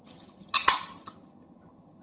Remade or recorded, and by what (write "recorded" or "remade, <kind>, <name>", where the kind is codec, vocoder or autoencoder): remade, vocoder, HiFi-GAN